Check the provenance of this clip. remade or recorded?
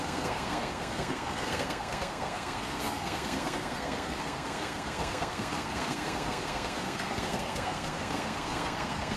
remade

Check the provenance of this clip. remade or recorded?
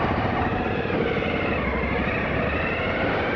remade